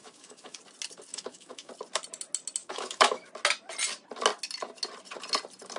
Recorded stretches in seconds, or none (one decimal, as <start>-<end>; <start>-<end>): 0.6-1.1; 1.7-2.6; 3.3-5.8